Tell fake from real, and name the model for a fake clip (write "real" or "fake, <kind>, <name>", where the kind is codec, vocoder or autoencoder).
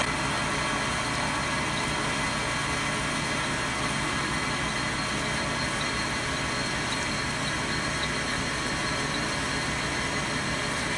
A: real